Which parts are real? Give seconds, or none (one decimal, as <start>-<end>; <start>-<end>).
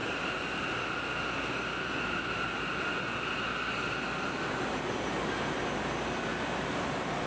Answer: 0.0-7.3